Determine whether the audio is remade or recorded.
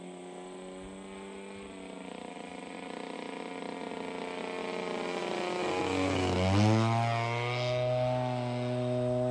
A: recorded